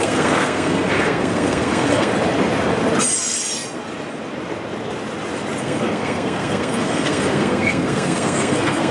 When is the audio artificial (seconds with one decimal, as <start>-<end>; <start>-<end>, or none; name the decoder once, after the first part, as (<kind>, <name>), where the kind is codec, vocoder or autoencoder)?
0.0-2.1 (codec, SNAC); 5.6-8.9